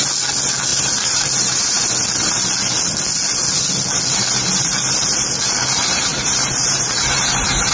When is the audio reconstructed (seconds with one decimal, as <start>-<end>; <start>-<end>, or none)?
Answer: 0.7-1.8; 6.1-7.7